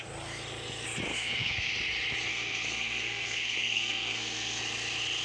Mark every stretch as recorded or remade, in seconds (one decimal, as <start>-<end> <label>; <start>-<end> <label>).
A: 0.0-1.1 recorded; 1.1-1.7 remade; 1.7-2.3 recorded; 2.3-4.6 remade; 4.6-5.2 recorded